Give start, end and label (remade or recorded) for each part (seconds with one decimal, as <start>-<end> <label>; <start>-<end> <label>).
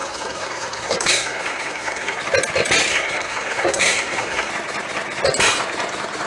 0.0-2.2 remade; 2.2-2.9 recorded; 2.9-4.5 remade; 4.5-6.3 recorded